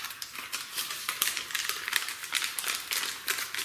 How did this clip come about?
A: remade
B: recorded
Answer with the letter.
A